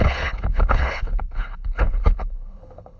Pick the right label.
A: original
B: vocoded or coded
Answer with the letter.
B